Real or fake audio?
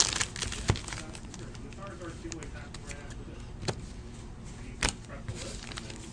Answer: real